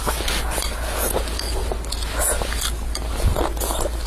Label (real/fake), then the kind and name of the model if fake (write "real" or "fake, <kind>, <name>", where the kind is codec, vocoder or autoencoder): real